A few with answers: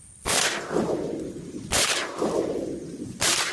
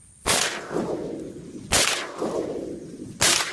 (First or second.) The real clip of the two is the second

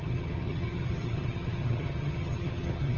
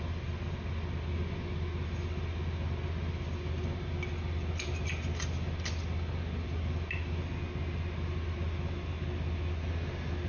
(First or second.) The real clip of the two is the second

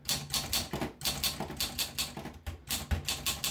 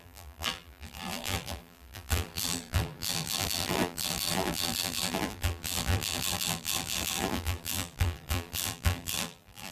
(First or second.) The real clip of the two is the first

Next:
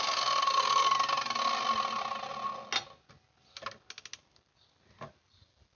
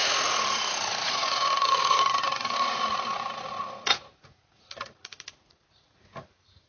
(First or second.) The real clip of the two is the first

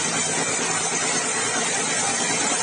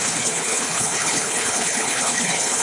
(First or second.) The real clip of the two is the first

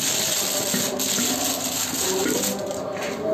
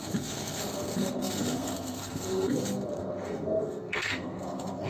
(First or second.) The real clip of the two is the first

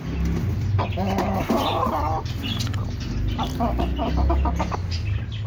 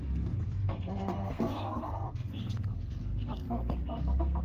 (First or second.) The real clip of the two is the first